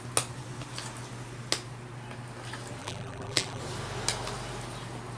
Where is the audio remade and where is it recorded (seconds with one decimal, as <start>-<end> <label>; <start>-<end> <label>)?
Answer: 0.0-2.8 recorded; 2.8-3.6 remade; 3.6-5.2 recorded